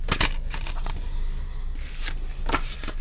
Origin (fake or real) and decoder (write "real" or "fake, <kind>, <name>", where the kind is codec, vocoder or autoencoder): real